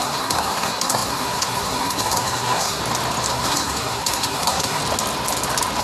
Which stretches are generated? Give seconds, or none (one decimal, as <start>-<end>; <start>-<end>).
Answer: 0.0-2.8; 3.3-4.8